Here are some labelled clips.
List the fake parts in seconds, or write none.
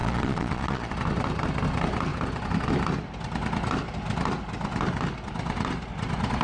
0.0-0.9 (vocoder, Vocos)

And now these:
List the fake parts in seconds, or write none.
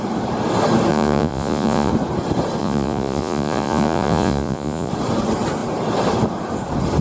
0.9-1.9 (vocoder, Vocos); 2.6-4.9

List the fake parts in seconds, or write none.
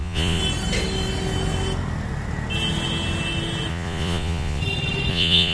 0.0-0.4 (vocoder, Vocos); 3.7-4.6; 5.1-5.5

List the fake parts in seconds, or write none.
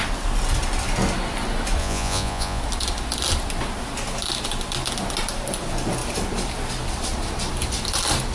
1.8-2.6 (vocoder, Vocos)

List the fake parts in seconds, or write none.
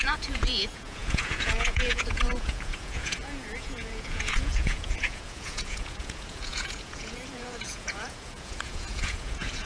0.0-9.7 (vocoder, Vocos)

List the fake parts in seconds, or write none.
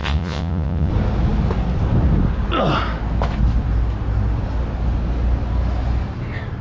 0.0-0.9 (vocoder, Vocos)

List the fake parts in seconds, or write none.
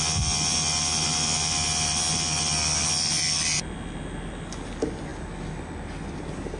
none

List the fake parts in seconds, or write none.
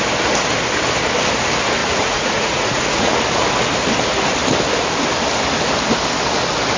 1.8-3.1 (vocoder, Vocos)